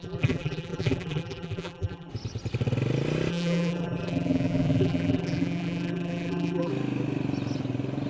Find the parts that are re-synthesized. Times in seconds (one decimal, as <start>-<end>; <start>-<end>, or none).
0.0-2.1; 3.3-6.7

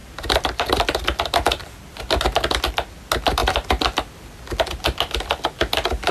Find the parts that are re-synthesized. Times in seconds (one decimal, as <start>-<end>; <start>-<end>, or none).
0.0-2.7; 3.4-4.6

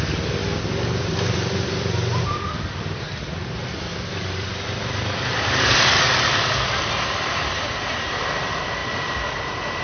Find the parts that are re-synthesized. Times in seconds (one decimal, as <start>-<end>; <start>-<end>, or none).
0.0-8.8

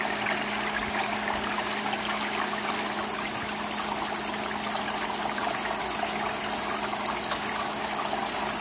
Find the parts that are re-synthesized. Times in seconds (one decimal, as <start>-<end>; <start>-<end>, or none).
0.8-1.5

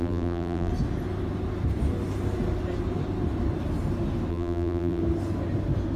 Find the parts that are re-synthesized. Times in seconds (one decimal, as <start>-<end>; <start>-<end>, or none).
0.0-0.7; 4.3-5.0

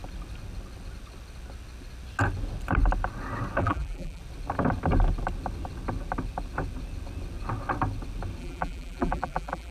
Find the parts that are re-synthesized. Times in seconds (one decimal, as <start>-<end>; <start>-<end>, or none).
3.6-4.2; 8.4-9.7

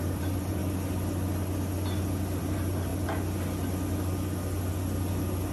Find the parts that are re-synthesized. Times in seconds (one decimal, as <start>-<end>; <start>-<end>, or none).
0.0-0.6; 2.4-2.9

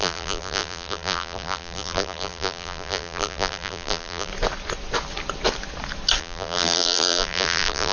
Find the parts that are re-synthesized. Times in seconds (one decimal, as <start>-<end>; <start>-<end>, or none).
0.0-4.3; 6.2-7.9